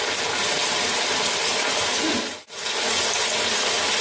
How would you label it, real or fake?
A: real